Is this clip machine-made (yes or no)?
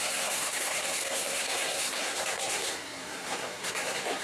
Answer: yes